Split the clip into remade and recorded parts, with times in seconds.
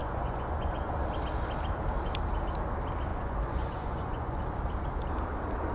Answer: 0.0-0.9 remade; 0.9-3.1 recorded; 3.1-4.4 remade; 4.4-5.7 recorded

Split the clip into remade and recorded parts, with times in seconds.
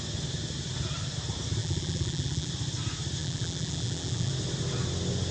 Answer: 0.0-1.6 recorded; 1.6-2.5 remade; 2.5-3.2 recorded; 3.2-4.3 remade; 4.3-5.3 recorded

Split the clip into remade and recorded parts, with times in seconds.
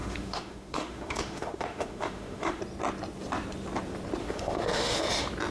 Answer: 0.0-2.6 remade; 2.6-4.2 recorded; 4.2-5.0 remade; 5.0-5.5 recorded